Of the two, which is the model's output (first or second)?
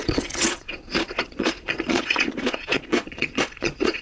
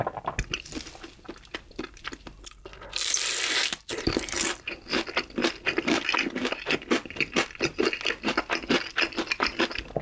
first